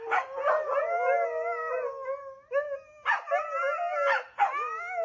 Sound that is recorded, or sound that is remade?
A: recorded